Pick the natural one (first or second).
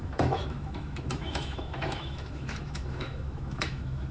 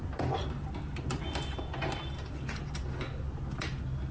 second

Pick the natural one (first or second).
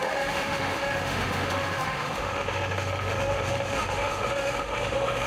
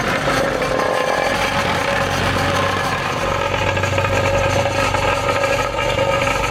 second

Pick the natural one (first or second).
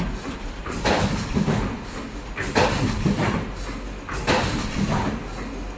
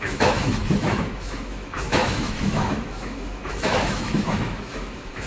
first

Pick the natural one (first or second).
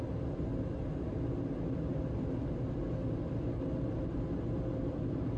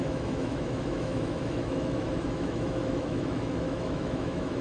first